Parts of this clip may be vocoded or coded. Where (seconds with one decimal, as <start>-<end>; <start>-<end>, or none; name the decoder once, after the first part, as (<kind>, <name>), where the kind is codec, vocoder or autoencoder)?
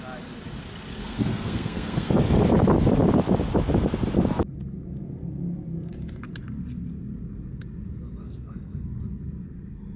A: 1.0-2.1 (codec, SNAC); 8.2-9.0